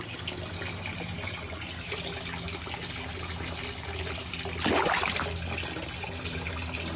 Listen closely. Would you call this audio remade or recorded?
recorded